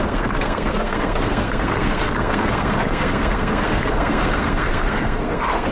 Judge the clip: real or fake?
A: fake